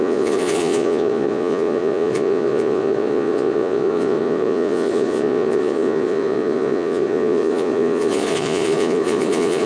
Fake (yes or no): yes